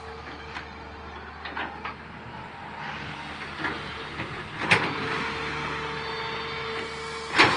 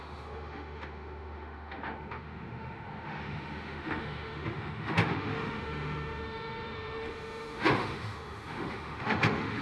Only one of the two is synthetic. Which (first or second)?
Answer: second